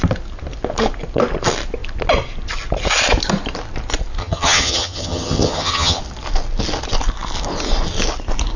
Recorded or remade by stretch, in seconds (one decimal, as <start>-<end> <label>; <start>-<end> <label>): 0.0-4.2 recorded; 4.2-6.0 remade; 6.0-8.6 recorded